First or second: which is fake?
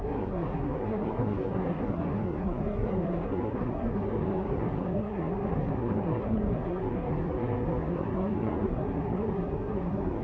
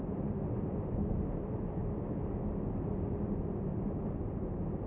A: first